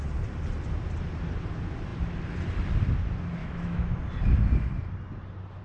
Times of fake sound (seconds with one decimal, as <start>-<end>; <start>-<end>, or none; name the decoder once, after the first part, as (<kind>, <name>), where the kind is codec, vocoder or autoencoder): 3.4-4.0 (autoencoder, DAC-VAE)